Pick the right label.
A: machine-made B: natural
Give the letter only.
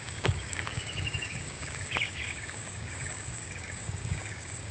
A